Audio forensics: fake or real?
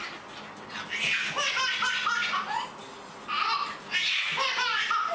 real